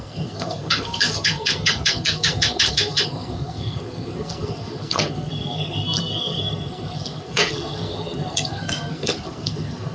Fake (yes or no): yes